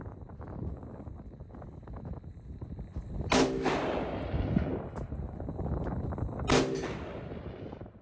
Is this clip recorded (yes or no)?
yes